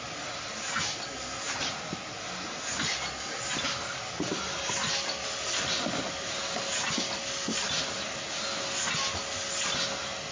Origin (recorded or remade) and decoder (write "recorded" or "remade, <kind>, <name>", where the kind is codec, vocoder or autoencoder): recorded